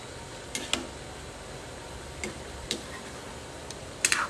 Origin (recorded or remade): recorded